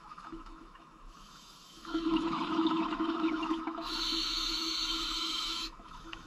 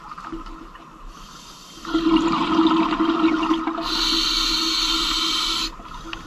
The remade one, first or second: first